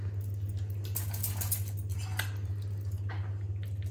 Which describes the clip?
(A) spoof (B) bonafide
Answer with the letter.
B